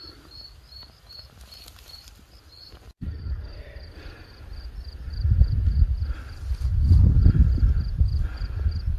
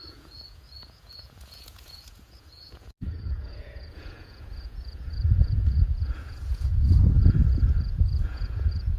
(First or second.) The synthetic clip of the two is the second